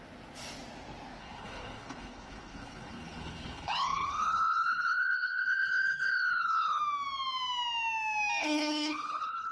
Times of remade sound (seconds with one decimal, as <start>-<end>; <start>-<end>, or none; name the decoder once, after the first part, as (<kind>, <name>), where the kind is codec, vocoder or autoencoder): 1.2-6.8 (codec, HILCodec); 8.4-9.5